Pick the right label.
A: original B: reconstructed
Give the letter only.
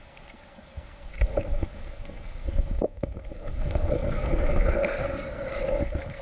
B